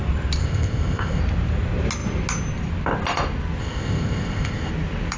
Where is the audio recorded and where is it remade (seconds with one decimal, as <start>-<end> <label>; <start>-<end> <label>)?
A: 0.0-0.4 recorded; 0.4-1.2 remade; 1.2-3.6 recorded; 3.6-4.7 remade; 4.7-5.2 recorded